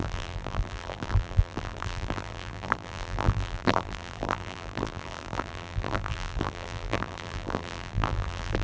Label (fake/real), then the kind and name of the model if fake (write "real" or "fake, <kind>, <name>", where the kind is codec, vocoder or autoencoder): fake, vocoder, BigVGAN v2